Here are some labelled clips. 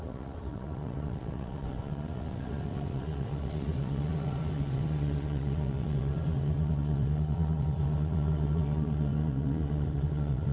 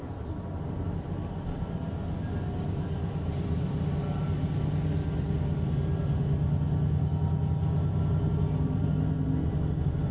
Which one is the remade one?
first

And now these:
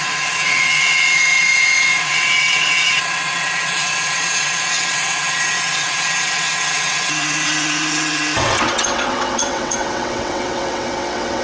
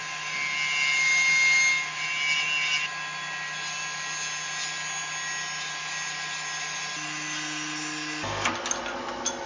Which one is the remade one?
first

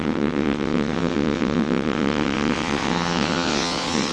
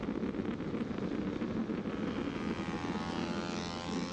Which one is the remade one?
first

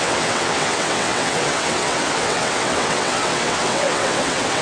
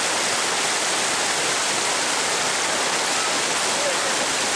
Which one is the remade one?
first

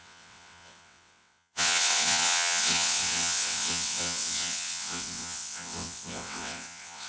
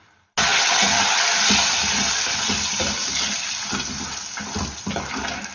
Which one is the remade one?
first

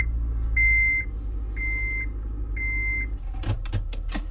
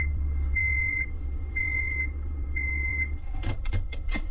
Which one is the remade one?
second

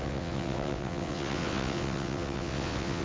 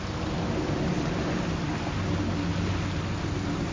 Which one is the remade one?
first